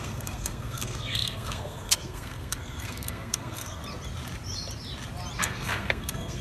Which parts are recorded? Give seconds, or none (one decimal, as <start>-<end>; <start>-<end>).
3.8-5.4